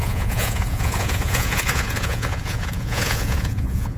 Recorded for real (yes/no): no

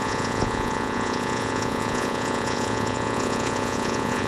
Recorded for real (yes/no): no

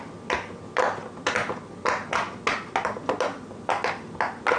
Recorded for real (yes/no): yes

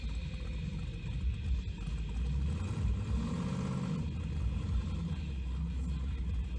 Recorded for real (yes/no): yes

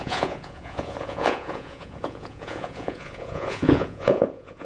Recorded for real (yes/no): no